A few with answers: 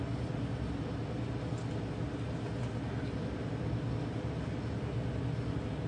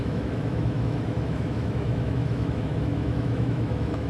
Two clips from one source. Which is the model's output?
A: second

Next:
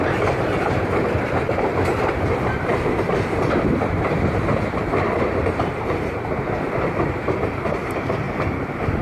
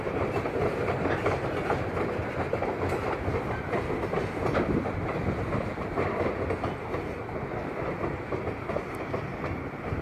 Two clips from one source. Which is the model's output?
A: first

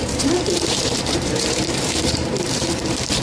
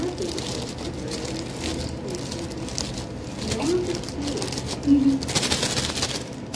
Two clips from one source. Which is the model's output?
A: first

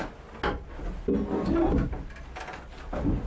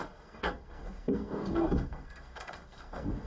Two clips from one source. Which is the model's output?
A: second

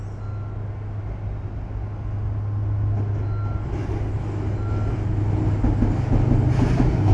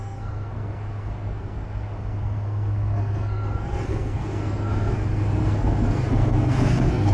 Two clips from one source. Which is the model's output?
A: second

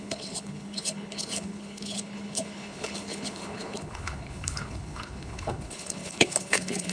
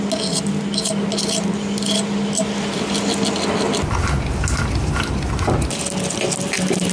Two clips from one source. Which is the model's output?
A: first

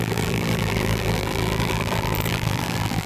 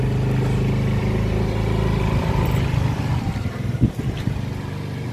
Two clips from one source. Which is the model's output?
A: first